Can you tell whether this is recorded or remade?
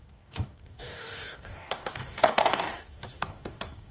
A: remade